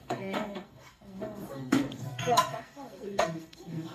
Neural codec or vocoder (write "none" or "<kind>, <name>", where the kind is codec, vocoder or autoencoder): codec, SNAC